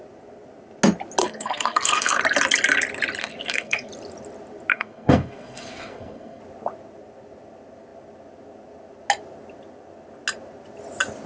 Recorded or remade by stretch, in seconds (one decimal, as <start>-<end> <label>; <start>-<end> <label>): 0.0-1.2 recorded; 1.2-2.2 remade; 2.2-3.2 recorded; 3.2-3.9 remade; 3.9-4.7 recorded; 4.7-6.4 remade; 6.4-11.3 recorded